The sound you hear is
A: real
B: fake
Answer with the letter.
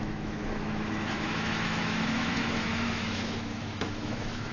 B